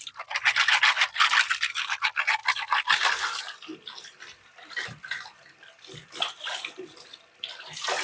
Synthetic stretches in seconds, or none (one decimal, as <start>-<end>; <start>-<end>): none